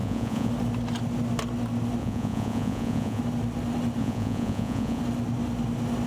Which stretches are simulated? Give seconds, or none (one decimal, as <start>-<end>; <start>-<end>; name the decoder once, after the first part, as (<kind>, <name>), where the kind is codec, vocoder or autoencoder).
0.0-0.5 (vocoder, Vocos); 2.0-3.2; 4.0-5.0